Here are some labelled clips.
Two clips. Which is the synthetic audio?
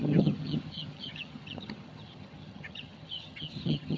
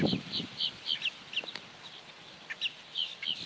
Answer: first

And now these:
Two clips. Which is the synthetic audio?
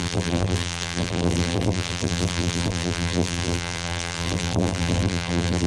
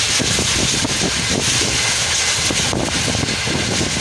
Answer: first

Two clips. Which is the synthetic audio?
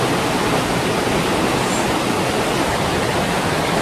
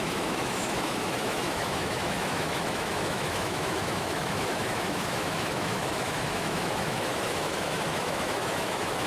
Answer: second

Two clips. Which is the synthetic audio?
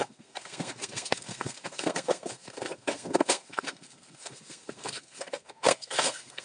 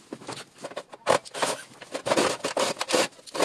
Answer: first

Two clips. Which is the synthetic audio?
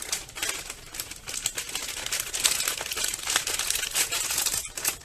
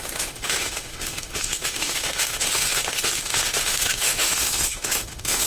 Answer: second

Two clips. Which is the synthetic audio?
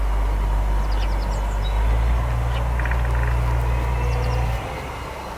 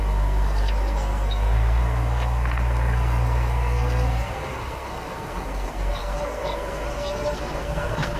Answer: second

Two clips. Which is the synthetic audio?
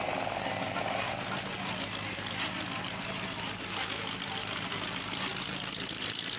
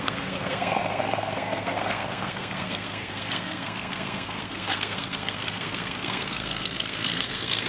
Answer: second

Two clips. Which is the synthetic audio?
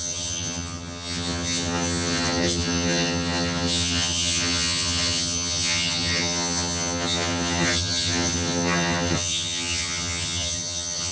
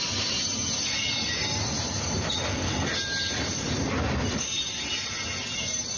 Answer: first